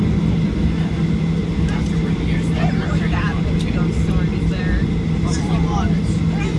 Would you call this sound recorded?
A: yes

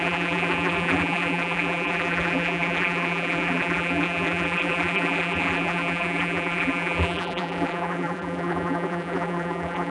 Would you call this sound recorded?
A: no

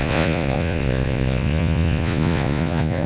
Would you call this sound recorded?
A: no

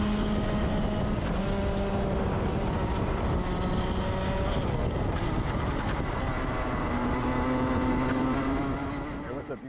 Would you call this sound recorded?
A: yes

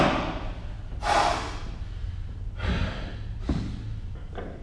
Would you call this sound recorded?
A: yes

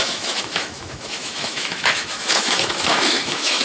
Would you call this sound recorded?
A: no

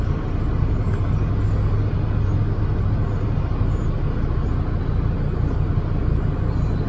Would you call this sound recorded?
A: yes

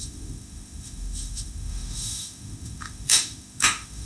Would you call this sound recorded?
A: no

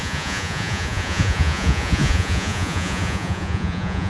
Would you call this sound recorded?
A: no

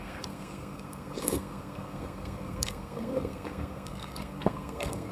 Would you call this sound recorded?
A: no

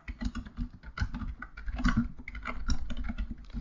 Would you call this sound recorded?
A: yes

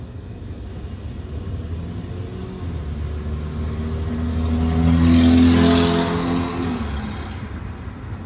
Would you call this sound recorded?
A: yes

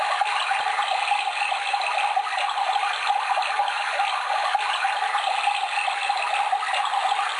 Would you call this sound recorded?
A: yes